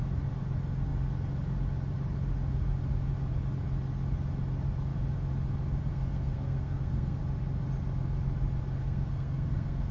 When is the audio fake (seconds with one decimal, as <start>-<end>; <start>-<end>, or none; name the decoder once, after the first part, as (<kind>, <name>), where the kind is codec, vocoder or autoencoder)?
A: 5.9-7.2 (codec, SNAC); 8.8-9.9